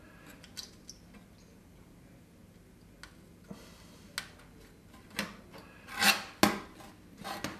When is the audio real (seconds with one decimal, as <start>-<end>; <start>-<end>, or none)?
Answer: 0.0-7.6